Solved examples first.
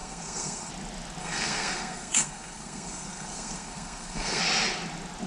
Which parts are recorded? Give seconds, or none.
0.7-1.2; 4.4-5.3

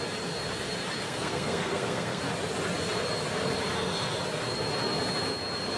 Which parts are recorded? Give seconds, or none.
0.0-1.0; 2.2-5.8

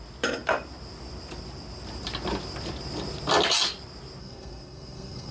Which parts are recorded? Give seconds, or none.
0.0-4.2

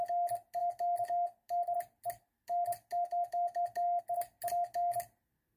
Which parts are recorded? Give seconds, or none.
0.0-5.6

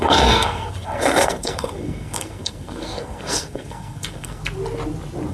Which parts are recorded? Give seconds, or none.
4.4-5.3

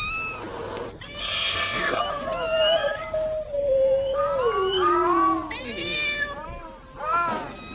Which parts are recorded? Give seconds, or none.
0.0-1.2; 2.0-7.7

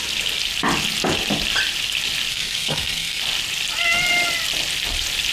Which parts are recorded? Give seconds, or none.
0.0-2.3; 3.2-5.3